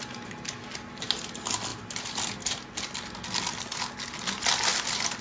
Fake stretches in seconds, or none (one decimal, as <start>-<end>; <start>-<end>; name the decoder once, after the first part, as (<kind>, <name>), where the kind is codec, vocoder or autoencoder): none